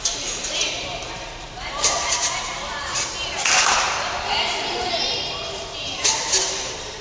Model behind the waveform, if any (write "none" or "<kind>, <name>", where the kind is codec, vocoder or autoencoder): vocoder, BigVGAN v2